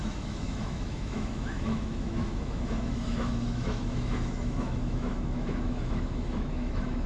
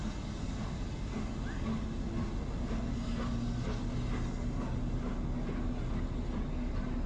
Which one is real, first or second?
second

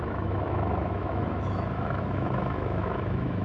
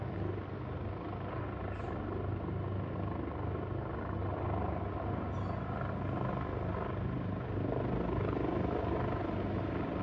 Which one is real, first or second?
second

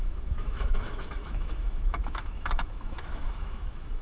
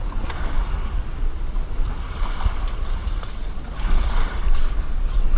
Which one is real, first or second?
second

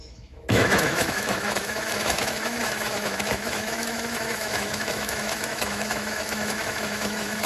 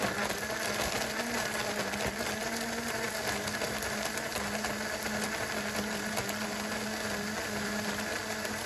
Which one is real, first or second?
second